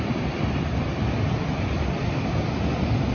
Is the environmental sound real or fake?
real